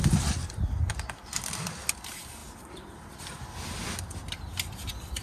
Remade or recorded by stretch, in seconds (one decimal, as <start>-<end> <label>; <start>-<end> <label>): 0.0-5.2 recorded